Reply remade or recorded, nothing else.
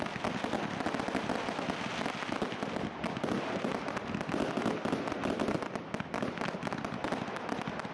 recorded